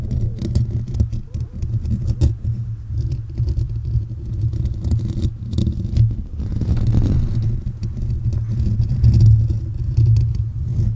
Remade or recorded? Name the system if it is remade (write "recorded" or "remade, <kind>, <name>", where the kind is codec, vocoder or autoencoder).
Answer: recorded